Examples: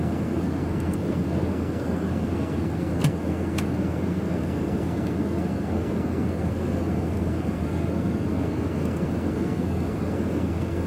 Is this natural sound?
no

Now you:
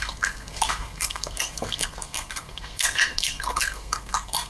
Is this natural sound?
no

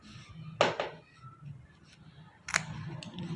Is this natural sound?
yes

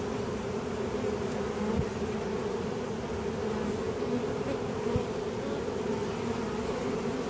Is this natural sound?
yes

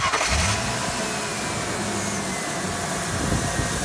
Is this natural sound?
yes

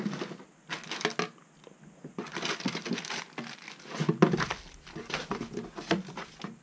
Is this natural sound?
yes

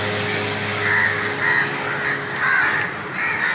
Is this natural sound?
yes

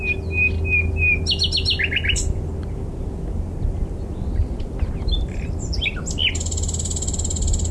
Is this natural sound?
yes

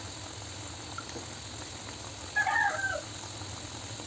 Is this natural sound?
yes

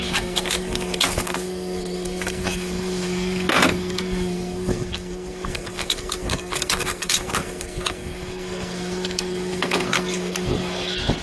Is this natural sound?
no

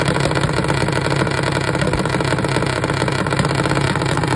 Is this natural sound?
yes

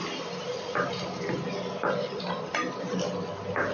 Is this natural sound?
yes